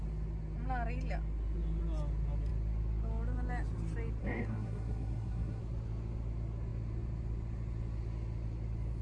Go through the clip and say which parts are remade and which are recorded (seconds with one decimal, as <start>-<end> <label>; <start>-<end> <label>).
0.0-4.2 recorded; 4.2-5.6 remade; 5.6-9.0 recorded